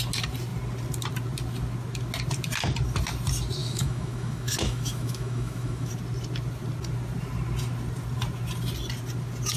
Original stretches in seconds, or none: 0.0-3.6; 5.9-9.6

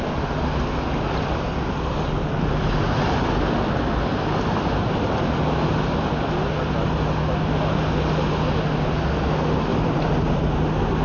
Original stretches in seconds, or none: 0.0-9.7; 10.4-11.0

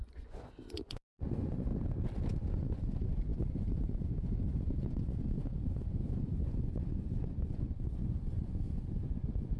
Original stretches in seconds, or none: 1.7-2.5

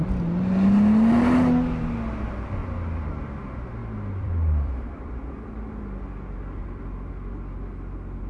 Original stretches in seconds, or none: 0.0-2.6; 3.1-3.8; 5.8-6.6; 7.1-8.3

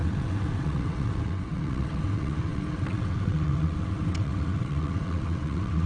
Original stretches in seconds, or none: none

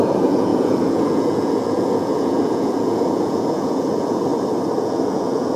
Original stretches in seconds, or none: 4.3-4.8

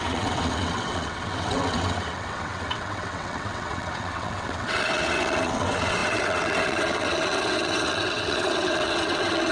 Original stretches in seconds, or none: none